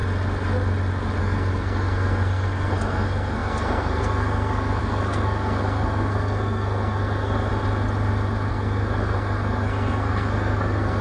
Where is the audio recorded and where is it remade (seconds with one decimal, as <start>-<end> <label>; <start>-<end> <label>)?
0.0-1.2 recorded; 1.2-7.5 remade; 7.5-8.5 recorded; 8.5-11.0 remade